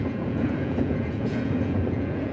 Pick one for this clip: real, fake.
fake